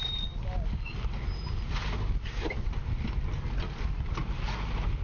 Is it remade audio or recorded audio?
recorded